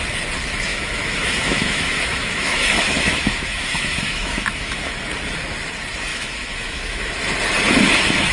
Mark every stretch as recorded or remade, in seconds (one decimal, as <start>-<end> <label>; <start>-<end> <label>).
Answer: 0.0-0.7 recorded; 0.7-4.9 remade; 4.9-6.1 recorded; 6.1-7.1 remade; 7.1-8.3 recorded